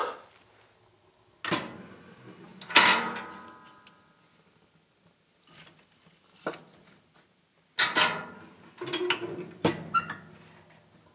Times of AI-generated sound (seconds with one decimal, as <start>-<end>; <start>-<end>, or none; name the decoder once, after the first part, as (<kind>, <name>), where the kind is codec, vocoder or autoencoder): none